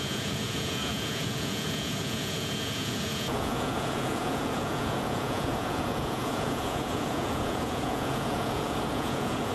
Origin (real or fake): fake